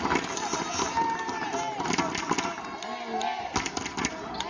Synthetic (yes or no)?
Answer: no